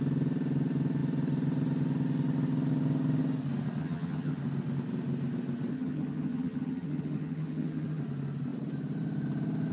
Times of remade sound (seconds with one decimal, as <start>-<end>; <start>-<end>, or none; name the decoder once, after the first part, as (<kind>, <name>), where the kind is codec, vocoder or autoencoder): 3.8-4.4 (vocoder, HiFi-GAN); 5.7-8.0